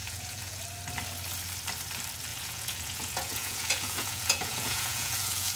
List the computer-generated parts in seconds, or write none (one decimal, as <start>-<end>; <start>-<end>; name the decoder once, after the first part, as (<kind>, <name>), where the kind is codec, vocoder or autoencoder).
0.0-0.6 (vocoder, Vocos); 2.3-5.6